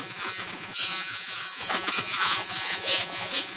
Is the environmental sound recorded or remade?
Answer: remade